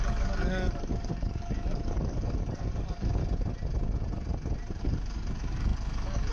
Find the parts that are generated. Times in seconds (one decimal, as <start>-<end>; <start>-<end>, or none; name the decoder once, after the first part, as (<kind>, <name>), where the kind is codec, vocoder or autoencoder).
0.0-3.2 (codec, DAC); 4.8-6.3